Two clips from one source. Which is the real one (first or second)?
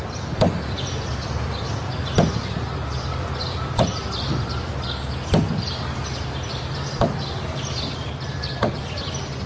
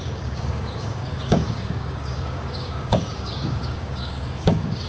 first